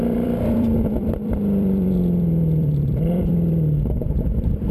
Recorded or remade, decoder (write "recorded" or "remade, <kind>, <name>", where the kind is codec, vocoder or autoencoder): remade, vocoder, BigVGAN v2